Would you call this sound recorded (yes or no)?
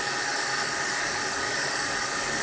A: no